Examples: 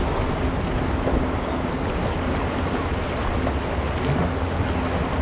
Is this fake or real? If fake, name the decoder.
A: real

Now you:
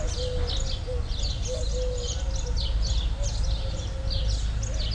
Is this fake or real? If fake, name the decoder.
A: real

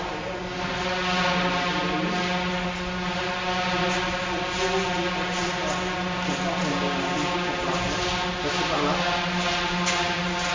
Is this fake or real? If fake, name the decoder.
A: real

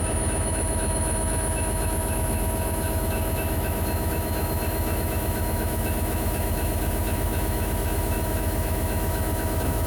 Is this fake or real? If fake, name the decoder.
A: fake, autoencoder, DAC-VAE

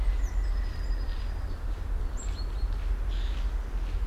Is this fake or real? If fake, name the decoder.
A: real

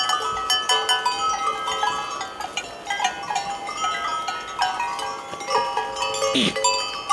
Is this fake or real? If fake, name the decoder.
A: real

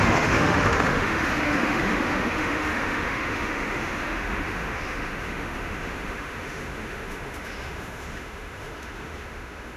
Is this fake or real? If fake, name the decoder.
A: fake, autoencoder, DAC-VAE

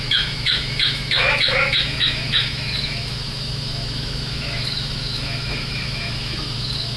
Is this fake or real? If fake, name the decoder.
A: fake, autoencoder, DAC-VAE